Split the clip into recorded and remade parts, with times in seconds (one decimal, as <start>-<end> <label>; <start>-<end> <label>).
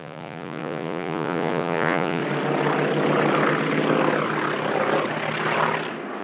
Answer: 0.0-2.2 remade; 2.2-6.2 recorded